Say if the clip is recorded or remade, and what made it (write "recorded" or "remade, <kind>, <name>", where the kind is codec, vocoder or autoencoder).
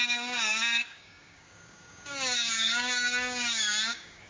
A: remade, codec, DAC